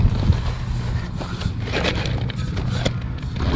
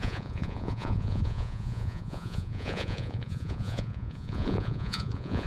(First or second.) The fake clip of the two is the second